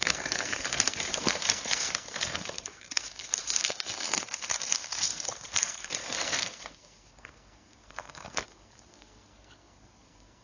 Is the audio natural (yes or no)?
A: no